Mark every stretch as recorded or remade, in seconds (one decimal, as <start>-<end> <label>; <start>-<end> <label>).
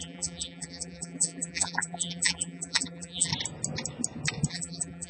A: 0.0-3.3 remade; 3.3-4.5 recorded; 4.5-5.1 remade